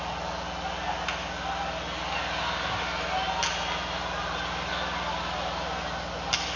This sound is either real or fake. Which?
real